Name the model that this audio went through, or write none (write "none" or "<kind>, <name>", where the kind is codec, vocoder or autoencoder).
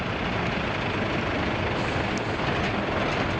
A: none